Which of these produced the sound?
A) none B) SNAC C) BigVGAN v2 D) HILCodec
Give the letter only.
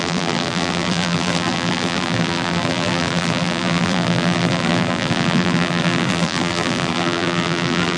C